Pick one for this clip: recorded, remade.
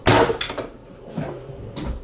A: recorded